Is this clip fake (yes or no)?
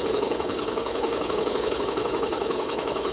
yes